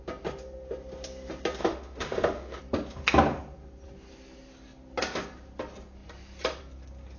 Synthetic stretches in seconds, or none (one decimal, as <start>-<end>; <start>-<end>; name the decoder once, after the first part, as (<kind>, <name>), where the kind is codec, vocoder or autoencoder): 1.6-2.6 (autoencoder, DAC-VAE)